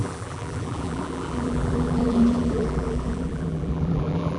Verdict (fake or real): fake